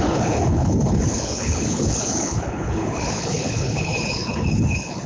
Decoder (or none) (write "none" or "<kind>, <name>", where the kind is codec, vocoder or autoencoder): codec, HILCodec